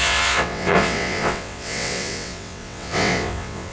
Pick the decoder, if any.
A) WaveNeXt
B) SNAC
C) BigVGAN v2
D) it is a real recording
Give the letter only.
A